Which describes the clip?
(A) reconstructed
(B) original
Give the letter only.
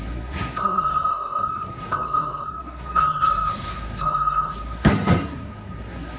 A